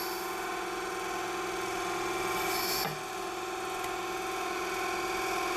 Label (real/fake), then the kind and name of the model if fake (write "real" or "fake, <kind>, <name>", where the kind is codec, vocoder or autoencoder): real